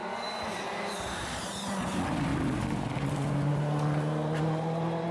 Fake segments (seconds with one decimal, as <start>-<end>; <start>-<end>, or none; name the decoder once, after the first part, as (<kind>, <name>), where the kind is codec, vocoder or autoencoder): none